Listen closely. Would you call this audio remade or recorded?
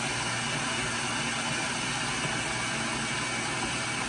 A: recorded